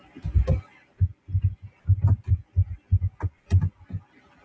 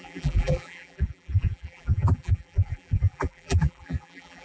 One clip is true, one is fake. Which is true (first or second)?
first